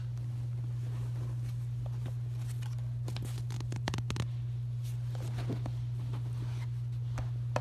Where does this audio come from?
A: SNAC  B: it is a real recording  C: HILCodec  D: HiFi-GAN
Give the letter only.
B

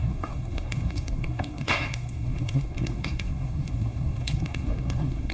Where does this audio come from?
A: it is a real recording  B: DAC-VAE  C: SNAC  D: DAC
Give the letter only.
C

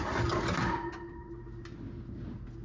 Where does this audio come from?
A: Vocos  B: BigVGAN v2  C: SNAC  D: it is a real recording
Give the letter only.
D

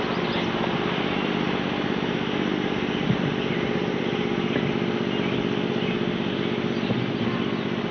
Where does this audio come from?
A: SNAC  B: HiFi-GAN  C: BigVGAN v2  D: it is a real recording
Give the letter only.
D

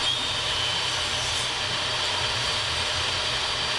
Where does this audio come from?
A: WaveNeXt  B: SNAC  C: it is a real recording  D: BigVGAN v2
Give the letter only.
C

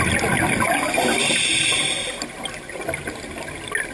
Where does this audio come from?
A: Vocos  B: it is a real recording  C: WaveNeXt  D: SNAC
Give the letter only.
B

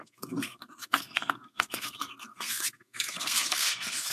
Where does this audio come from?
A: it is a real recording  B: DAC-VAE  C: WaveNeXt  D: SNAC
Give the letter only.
D